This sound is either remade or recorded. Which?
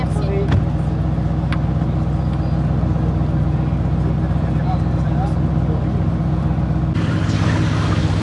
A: recorded